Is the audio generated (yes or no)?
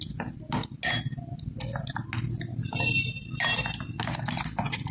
no